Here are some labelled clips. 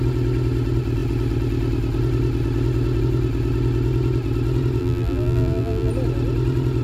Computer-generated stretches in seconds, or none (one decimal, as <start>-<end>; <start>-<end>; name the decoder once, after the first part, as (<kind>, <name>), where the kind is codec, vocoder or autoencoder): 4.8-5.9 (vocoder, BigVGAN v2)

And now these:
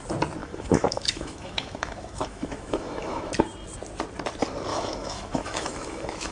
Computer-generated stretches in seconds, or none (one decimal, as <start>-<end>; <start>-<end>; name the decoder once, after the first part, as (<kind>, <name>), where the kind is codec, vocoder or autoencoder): 0.4-3.3 (autoencoder, DAC-VAE); 4.7-6.3

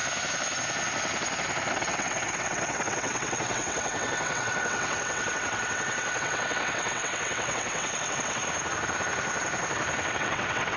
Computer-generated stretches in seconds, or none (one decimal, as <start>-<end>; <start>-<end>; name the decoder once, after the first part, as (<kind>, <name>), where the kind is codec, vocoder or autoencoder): 1.7-8.4 (vocoder, WaveNeXt); 10.1-10.8

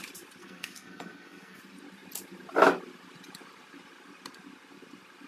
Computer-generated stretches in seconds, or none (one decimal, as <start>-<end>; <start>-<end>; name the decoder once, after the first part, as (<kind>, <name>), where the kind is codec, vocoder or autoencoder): 0.4-1.6 (codec, SNAC)